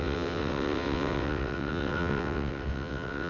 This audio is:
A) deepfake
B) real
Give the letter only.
A